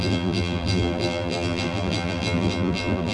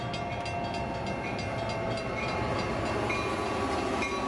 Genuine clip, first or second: second